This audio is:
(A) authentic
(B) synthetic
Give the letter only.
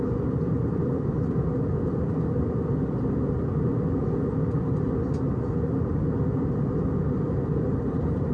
A